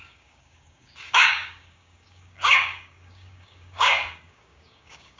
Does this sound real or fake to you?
fake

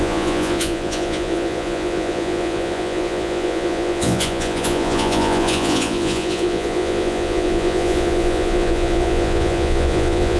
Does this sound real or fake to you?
fake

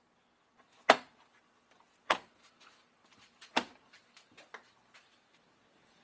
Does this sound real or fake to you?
real